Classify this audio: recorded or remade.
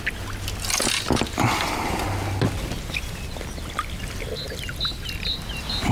recorded